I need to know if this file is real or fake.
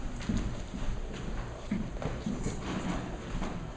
fake